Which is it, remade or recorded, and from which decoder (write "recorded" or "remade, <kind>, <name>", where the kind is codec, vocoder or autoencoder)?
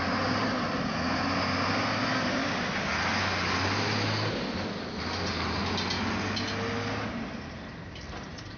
recorded